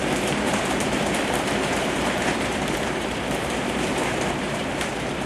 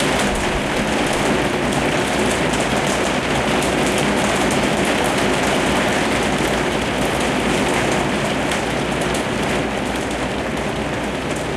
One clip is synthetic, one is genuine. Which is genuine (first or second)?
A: second